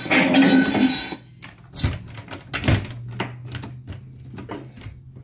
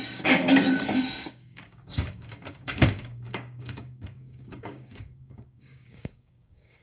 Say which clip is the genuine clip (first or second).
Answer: first